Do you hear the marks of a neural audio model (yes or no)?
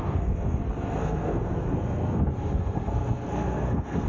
yes